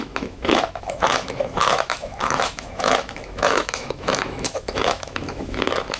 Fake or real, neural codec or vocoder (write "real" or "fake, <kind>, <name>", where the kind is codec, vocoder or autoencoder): fake, autoencoder, DAC-VAE